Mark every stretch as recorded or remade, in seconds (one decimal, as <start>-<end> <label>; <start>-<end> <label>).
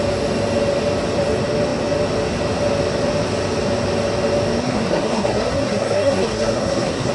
0.0-4.6 recorded; 4.6-7.1 remade